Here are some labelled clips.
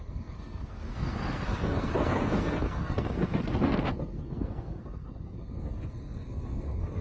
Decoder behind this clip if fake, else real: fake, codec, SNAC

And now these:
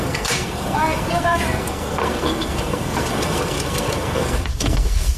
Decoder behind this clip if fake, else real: fake, codec, SNAC